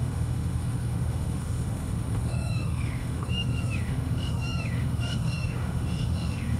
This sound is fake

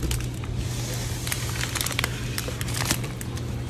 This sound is real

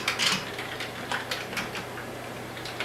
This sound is real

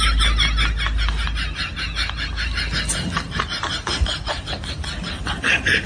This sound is real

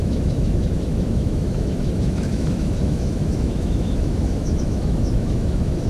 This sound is fake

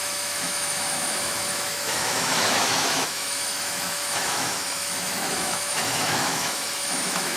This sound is fake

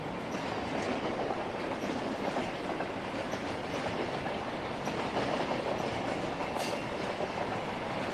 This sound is real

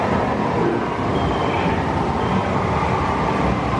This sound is real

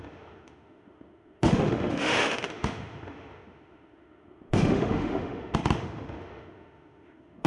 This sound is fake